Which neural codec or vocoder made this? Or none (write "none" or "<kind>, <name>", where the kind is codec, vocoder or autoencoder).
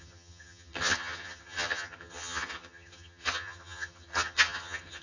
vocoder, HiFi-GAN